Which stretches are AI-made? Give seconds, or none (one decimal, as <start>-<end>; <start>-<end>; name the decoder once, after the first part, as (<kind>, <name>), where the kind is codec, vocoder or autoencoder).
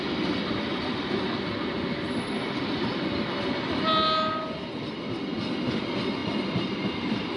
none